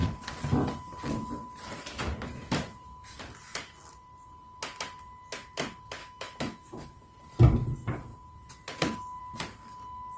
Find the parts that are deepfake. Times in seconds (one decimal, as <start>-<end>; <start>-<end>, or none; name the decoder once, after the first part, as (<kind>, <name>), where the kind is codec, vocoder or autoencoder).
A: 6.0-7.0 (autoencoder, DAC-VAE)